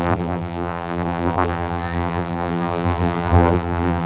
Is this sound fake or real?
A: fake